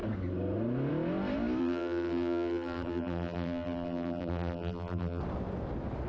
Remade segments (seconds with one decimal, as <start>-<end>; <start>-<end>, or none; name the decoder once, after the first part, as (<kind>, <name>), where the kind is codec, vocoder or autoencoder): 1.6-5.2 (vocoder, BigVGAN v2)